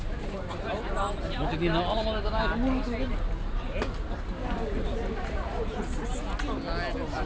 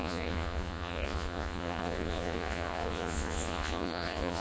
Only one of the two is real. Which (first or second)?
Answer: first